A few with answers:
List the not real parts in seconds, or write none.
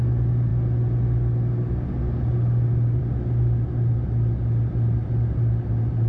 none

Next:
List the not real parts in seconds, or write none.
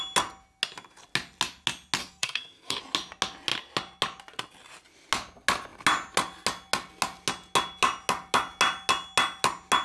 2.0-2.8 (codec, SNAC)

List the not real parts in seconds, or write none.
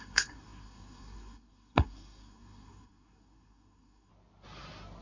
0.0-4.1 (codec, SNAC)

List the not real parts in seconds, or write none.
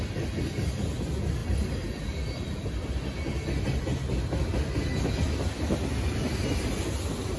none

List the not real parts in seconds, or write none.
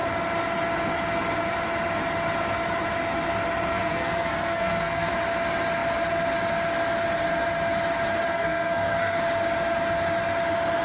3.7-5.1 (codec, SNAC); 8.3-9.2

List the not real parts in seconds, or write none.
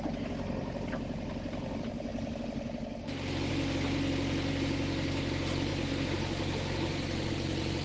none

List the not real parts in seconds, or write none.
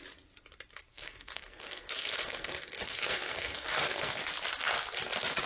0.9-4.2 (codec, SNAC)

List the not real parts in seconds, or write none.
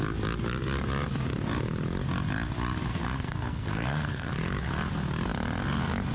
2.9-4.3 (codec, SNAC)